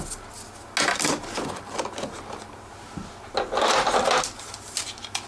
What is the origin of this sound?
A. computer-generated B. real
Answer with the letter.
B